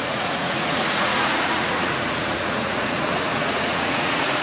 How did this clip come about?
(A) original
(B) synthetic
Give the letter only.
B